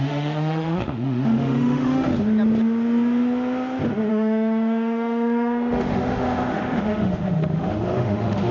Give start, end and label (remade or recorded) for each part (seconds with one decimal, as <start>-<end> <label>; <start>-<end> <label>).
0.0-2.1 remade; 2.1-4.1 recorded; 4.1-8.5 remade